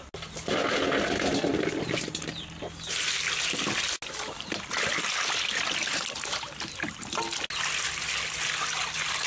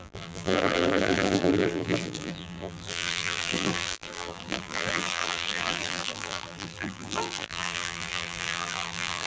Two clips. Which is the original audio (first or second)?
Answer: first